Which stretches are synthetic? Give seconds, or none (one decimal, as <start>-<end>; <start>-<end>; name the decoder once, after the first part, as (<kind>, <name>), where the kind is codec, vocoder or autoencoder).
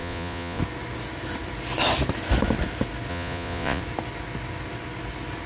0.0-0.6 (vocoder, Vocos); 3.1-3.8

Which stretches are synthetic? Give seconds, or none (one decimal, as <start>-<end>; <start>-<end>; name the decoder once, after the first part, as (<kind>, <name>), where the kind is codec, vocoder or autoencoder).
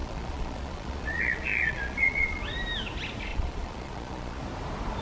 0.0-2.4 (vocoder, Vocos); 3.3-4.4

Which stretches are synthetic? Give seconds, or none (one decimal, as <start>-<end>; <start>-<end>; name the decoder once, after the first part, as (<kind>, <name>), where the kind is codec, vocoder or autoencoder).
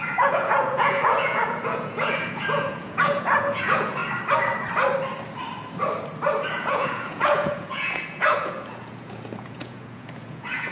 0.0-4.0 (vocoder, Vocos); 6.5-10.7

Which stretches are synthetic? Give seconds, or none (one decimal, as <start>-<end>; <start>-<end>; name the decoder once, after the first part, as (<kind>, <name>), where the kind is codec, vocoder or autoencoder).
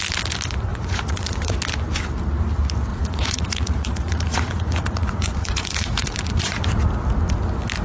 0.7-1.6 (vocoder, Vocos); 2.9-6.8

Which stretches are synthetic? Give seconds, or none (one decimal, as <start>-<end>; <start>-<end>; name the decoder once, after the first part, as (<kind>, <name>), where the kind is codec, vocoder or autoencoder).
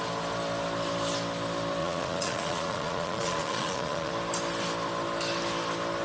1.8-4.1 (vocoder, Vocos)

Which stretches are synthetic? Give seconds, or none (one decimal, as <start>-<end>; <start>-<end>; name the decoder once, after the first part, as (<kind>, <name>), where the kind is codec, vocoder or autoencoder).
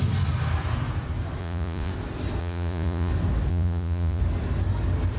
1.4-1.9 (vocoder, Vocos); 2.4-3.1; 3.5-4.2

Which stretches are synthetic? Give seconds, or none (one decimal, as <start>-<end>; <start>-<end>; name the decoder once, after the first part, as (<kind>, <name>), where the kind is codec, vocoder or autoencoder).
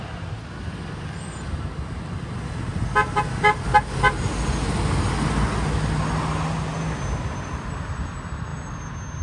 none